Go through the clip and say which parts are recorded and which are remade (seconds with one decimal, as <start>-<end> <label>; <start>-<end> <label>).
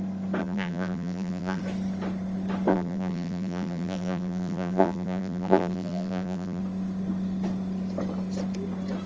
0.0-0.4 recorded; 0.4-1.6 remade; 1.6-2.7 recorded; 2.7-6.6 remade; 6.6-9.1 recorded